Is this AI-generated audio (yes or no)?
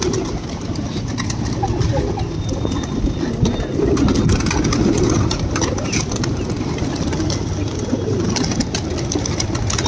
no